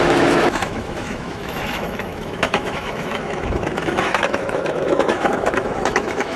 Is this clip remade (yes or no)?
yes